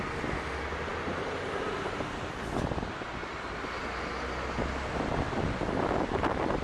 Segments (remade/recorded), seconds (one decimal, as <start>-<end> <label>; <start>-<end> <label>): 0.0-0.9 recorded; 0.9-3.3 remade; 3.3-6.6 recorded